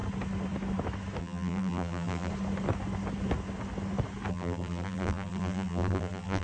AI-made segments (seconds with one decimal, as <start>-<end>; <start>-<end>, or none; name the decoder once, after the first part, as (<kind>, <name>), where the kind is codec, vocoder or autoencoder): 1.2-2.3 (vocoder, BigVGAN v2); 4.3-6.4